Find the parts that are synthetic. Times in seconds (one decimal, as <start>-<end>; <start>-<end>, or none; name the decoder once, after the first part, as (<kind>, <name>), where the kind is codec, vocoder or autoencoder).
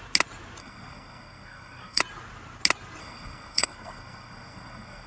0.6-2.0 (codec, SNAC); 3.0-5.1